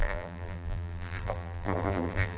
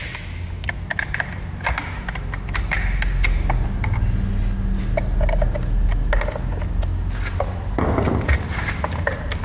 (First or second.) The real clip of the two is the second